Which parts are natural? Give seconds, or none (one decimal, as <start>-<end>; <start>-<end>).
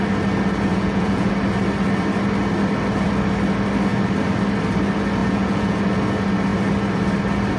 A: 0.0-0.7; 1.3-5.2; 5.8-7.6